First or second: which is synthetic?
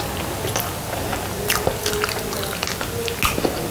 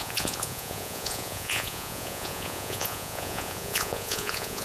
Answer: second